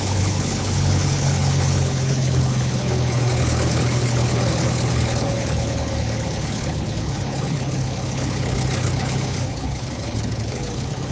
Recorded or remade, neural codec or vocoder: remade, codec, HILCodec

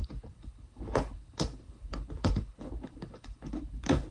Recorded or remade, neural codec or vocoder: remade, codec, HILCodec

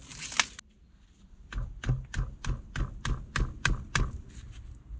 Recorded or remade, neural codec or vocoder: recorded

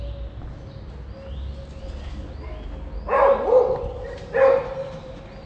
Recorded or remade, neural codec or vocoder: recorded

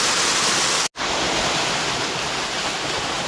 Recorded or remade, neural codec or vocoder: recorded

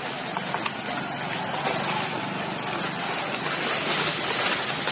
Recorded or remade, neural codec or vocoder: recorded